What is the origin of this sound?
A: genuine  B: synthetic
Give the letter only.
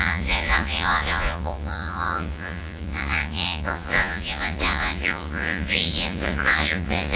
B